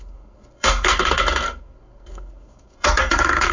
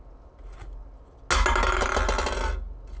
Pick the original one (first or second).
second